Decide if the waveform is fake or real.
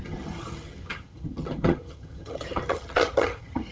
fake